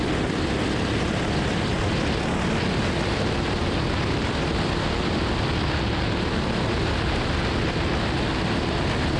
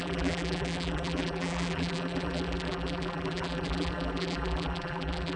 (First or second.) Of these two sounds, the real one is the first